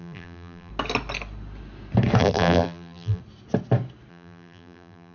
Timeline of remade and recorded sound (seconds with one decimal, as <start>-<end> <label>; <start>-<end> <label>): 0.0-0.7 remade; 0.7-2.2 recorded; 2.2-3.2 remade; 3.2-4.1 recorded; 4.1-5.1 remade